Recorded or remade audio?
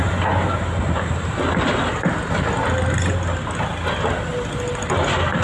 recorded